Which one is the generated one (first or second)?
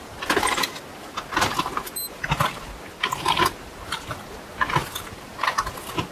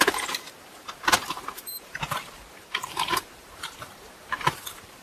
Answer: second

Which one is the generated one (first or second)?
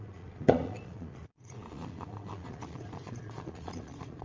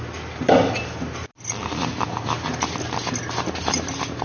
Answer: first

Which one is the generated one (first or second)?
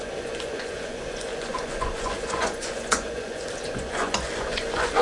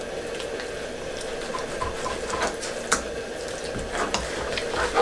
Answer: first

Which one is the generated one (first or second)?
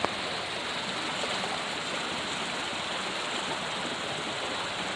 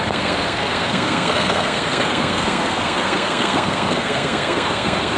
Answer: second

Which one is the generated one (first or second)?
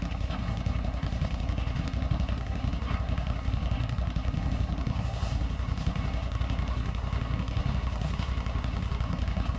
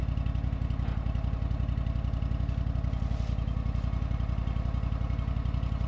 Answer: first